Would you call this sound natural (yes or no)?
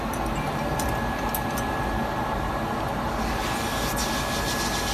yes